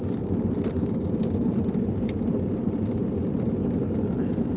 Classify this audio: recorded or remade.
recorded